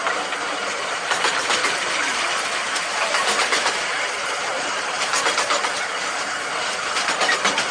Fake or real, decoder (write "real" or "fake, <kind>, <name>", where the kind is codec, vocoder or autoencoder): real